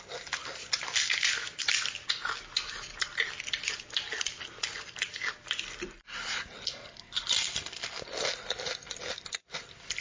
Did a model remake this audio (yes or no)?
yes